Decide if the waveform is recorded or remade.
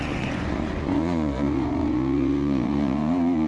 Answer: remade